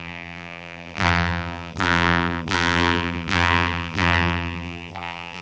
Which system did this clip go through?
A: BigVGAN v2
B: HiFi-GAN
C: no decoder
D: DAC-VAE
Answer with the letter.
A